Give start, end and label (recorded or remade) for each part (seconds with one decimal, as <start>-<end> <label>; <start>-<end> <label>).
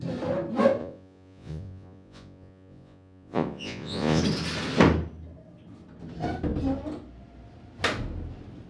0.0-0.8 recorded; 0.8-4.2 remade; 4.2-8.7 recorded